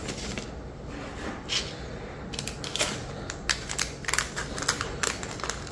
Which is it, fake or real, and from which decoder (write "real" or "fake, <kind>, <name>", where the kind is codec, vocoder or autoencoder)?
real